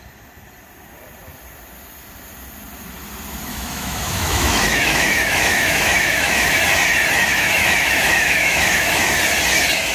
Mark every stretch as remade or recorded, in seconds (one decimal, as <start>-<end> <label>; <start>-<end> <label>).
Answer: 0.0-3.5 recorded; 3.5-6.6 remade; 6.6-7.3 recorded; 7.3-9.0 remade; 9.0-9.9 recorded